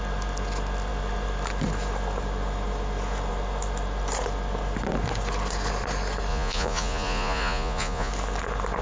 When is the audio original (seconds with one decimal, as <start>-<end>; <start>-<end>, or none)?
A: 0.0-6.3; 8.1-8.8